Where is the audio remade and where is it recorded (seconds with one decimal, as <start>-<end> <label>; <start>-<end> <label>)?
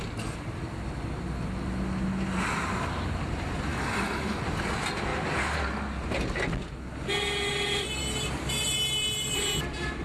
0.0-3.7 recorded; 3.7-4.4 remade; 4.4-10.0 recorded